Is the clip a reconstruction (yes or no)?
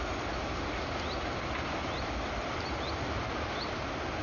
no